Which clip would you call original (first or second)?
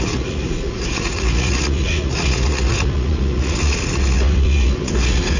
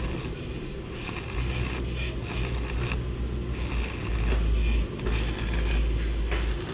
second